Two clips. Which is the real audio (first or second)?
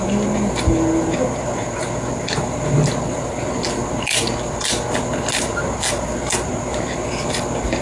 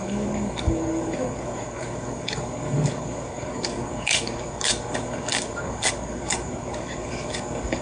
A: first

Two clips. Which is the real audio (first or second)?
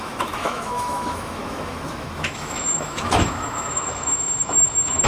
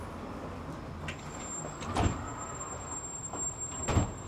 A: second